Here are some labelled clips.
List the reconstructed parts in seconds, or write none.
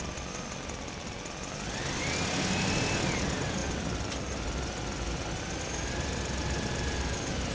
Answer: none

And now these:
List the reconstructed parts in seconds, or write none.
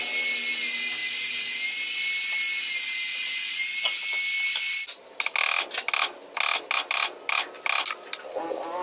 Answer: none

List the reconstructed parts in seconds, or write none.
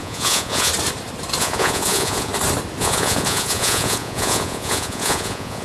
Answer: 0.0-0.7; 1.4-2.3; 2.8-5.6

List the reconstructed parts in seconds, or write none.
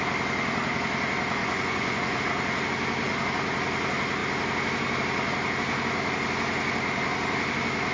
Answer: 1.4-2.2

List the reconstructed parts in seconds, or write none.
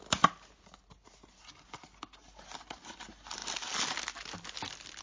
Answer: none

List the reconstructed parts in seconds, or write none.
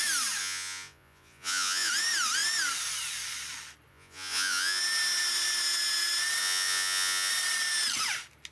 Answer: 0.4-1.9; 3.9-4.8; 6.4-7.3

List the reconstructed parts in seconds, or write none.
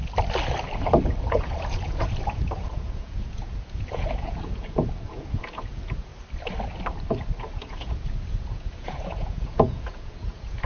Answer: 1.2-6.1; 7.4-10.7